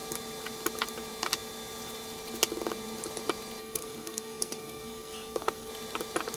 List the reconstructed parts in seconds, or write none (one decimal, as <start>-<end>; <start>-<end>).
3.6-5.7